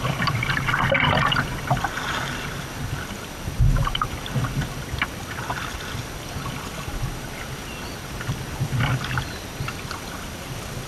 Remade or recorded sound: recorded